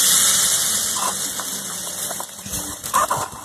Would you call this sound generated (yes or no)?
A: no